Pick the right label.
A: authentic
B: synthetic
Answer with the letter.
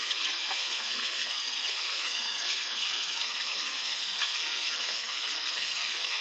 B